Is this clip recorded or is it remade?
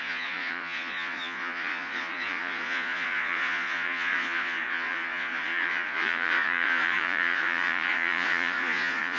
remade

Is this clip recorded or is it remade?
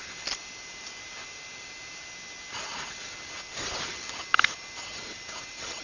recorded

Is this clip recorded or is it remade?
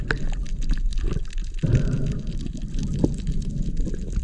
recorded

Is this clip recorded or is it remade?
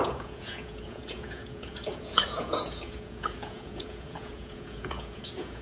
remade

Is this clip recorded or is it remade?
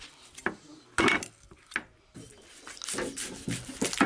recorded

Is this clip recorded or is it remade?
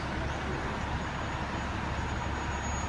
recorded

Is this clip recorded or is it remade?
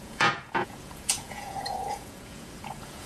remade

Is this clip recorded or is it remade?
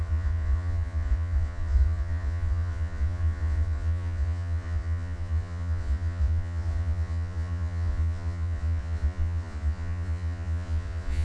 remade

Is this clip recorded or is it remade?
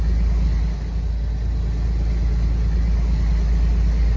recorded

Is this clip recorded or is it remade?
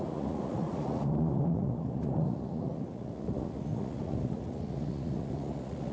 remade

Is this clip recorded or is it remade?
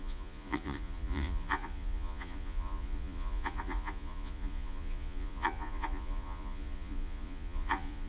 remade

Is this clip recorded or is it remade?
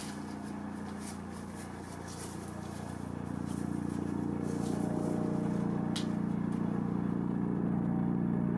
recorded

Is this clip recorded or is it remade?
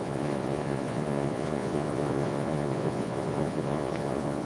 remade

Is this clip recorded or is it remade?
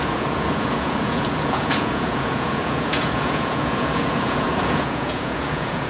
remade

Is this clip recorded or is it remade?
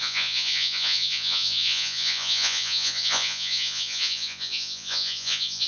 remade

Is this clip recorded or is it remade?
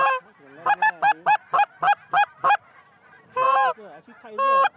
recorded